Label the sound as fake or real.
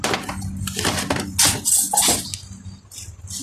real